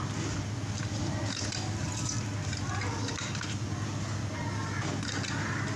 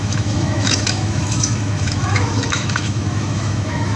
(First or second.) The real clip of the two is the first